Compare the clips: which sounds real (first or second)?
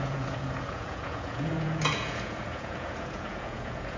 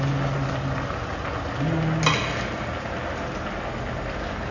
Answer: second